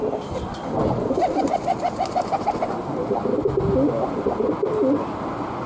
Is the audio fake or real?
real